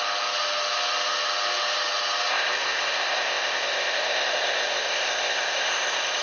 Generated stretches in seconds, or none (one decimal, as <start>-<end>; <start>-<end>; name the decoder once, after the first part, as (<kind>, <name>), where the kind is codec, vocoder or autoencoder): 2.3-6.2 (codec, ZipCodec)